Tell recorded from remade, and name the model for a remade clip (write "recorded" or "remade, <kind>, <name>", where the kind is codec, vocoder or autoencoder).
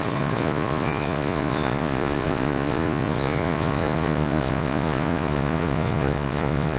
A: remade, vocoder, Vocos